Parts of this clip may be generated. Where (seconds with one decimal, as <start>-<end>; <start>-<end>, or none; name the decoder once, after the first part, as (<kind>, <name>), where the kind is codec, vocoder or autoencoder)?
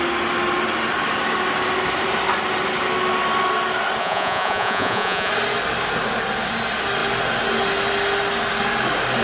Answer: 4.0-5.3 (vocoder, Vocos)